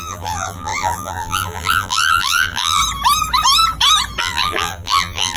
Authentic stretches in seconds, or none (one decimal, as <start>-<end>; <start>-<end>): 2.8-4.2